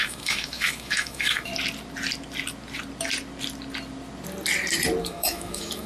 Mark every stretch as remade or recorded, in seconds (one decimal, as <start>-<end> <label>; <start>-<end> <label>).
0.0-1.5 remade; 1.5-5.0 recorded; 5.0-5.9 remade